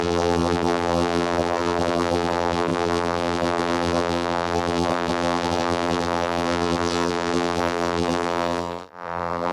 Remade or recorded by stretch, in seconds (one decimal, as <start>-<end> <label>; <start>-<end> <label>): 0.0-9.5 remade

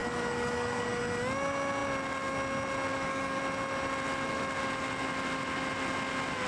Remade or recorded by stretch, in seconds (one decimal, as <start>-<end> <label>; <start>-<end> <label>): 0.0-1.0 remade; 1.0-2.9 recorded; 2.9-3.4 remade; 3.4-6.5 recorded

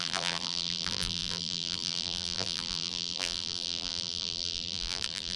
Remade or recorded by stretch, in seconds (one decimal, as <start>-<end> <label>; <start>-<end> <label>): 0.0-5.4 remade